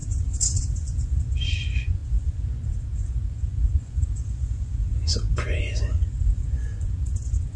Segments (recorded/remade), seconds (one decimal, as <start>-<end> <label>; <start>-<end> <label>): 0.0-7.6 remade